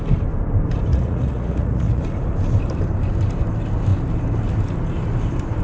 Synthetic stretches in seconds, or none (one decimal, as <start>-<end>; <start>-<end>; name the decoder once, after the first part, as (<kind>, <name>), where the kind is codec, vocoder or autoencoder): 0.9-2.0 (vocoder, Vocos)